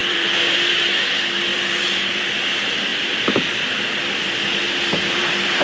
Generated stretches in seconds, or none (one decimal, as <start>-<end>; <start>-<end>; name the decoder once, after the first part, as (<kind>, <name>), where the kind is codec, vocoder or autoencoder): 0.0-0.7 (vocoder, BigVGAN v2); 1.5-2.3; 2.9-5.6